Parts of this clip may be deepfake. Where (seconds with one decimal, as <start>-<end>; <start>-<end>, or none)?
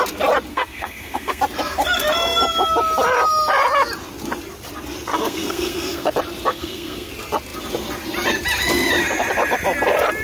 0.5-1.4; 5.1-6.1; 6.5-7.1